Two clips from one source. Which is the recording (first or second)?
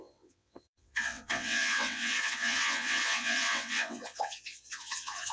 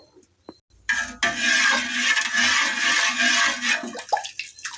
second